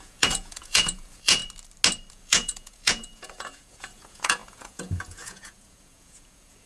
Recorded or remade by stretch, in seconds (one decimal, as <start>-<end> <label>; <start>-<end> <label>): 0.0-1.4 remade; 1.4-2.1 recorded; 2.1-6.7 remade